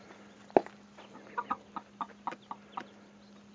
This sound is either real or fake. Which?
real